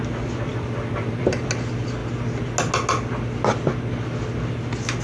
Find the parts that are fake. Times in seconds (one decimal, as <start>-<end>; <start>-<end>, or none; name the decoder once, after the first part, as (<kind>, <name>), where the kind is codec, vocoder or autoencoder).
0.5-1.5 (vocoder, BigVGAN v2)